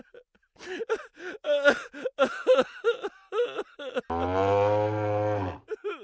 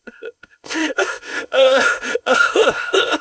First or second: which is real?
first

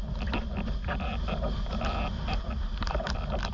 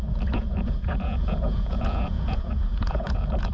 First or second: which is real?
first